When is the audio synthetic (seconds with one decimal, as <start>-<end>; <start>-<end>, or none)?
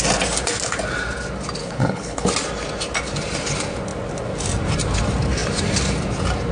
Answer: 1.6-2.3